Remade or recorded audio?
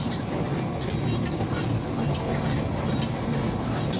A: recorded